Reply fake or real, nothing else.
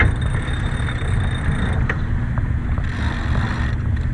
real